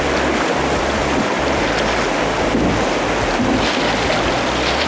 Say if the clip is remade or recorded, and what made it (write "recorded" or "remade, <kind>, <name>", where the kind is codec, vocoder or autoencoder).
recorded